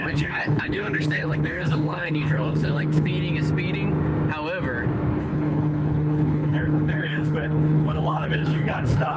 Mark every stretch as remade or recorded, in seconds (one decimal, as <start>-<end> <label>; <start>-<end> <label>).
0.0-3.1 remade; 3.1-5.2 recorded; 5.2-9.2 remade